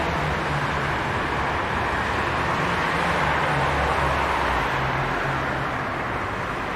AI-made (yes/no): no